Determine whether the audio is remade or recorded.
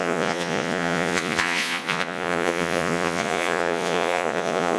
remade